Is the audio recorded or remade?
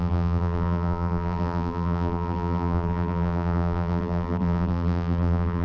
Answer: remade